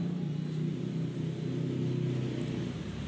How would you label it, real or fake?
real